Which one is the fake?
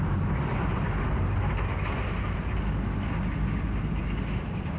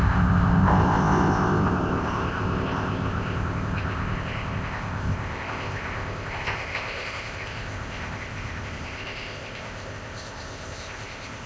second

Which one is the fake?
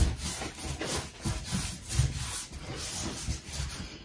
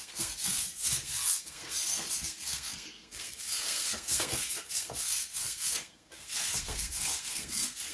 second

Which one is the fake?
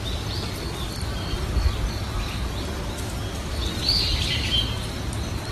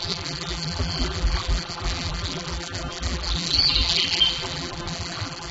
second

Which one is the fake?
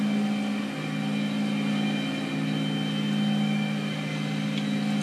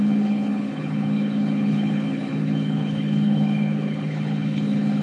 second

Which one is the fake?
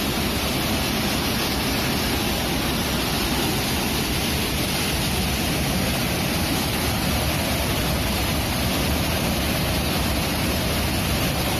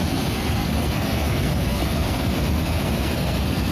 second